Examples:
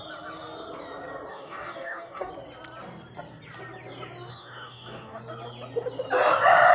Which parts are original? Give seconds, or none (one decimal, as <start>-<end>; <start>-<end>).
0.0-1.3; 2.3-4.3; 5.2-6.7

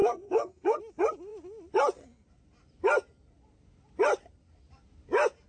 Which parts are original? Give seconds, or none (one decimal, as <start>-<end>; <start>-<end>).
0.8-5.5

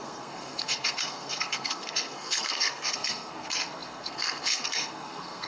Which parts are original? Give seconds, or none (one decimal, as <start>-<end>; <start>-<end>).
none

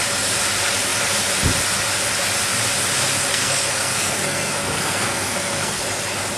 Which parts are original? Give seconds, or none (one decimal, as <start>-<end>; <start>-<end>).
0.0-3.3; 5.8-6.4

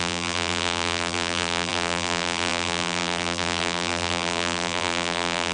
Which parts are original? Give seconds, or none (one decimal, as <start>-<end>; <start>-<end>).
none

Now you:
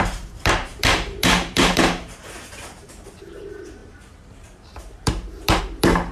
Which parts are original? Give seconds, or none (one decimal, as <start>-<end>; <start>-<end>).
none

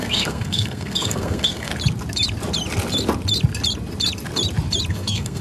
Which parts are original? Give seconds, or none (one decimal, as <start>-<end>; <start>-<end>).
1.7-4.9